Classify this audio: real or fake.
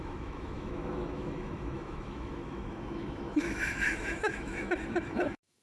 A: fake